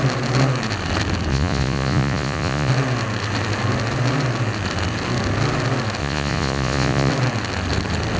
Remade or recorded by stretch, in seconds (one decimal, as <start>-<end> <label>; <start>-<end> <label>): 0.0-1.3 recorded; 1.3-2.7 remade; 2.7-6.0 recorded; 6.0-7.1 remade; 7.1-8.2 recorded